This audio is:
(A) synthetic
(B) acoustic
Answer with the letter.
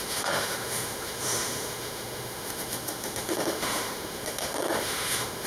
A